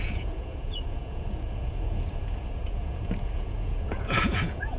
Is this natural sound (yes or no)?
no